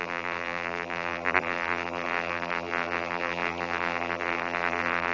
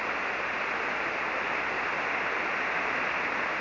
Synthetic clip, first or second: first